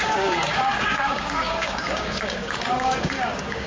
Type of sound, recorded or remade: remade